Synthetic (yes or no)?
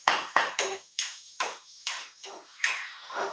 yes